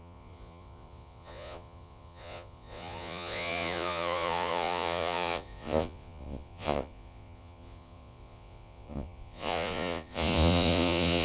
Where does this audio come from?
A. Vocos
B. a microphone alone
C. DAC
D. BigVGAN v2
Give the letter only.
A